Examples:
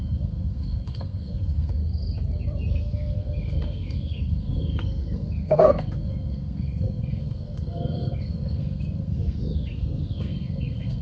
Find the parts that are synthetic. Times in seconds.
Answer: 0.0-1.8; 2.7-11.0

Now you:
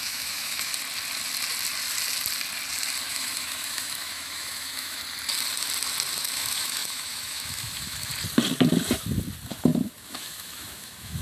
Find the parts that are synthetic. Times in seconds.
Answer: 0.0-0.7; 3.1-5.0; 6.2-8.1; 9.5-11.2

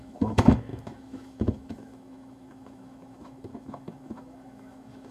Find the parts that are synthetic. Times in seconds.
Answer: 0.0-5.1

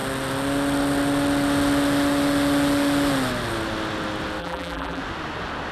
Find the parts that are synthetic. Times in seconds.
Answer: 4.4-5.0

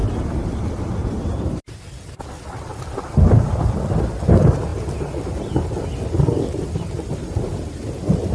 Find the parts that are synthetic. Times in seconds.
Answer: 0.0-0.5; 1.0-1.8